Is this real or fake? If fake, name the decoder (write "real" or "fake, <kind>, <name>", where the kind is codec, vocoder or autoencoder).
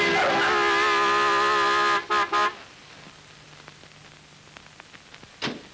real